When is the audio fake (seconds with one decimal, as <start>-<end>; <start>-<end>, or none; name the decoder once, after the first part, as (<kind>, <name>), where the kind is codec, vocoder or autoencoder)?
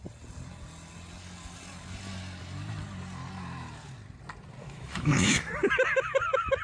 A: 4.6-5.5 (autoencoder, DAC-VAE)